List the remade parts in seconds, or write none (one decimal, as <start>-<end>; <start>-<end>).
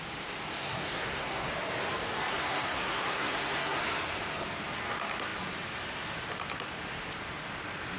0.6-1.5; 2.3-3.8